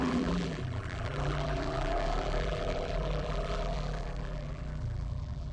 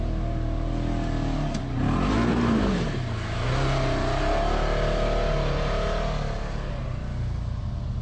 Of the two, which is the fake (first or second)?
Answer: first